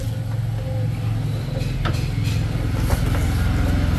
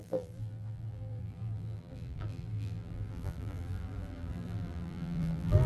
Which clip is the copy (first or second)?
second